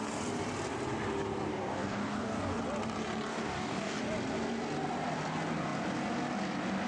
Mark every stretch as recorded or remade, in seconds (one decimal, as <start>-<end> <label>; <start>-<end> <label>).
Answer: 0.0-1.5 recorded; 1.5-2.6 remade; 2.6-3.3 recorded; 3.3-4.0 remade; 4.0-6.9 recorded